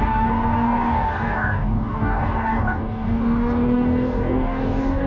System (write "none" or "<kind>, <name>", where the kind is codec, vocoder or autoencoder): codec, DAC